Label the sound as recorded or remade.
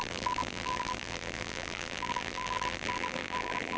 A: remade